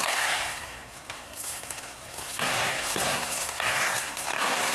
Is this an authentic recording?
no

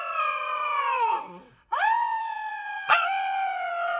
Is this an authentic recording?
no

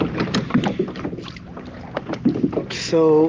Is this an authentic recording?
yes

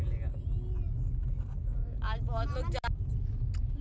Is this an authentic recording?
yes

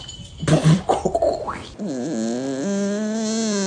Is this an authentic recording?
yes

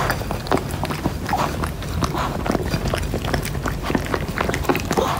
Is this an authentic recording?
no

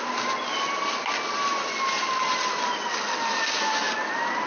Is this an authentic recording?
yes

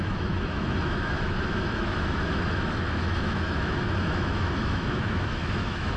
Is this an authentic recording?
no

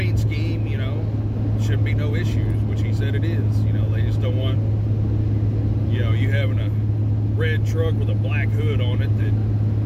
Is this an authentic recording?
yes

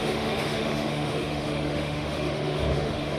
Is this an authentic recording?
no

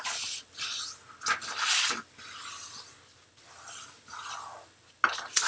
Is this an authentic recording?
yes